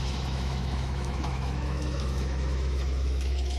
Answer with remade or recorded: remade